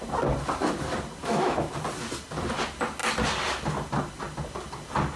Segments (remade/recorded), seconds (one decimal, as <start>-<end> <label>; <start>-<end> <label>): 0.0-1.2 recorded; 1.2-1.7 remade; 1.7-5.2 recorded